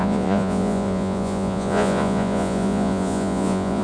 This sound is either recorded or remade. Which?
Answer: remade